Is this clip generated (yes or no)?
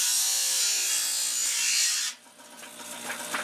no